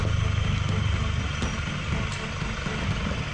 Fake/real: real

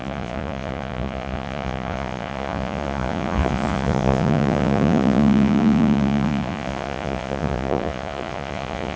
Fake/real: fake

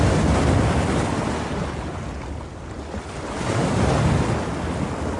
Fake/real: real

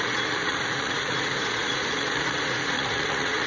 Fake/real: fake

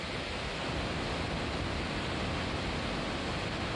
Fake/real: real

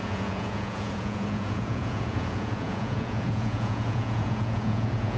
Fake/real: fake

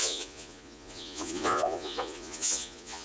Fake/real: fake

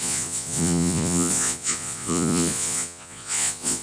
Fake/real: fake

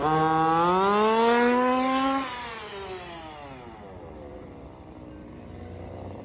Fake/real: real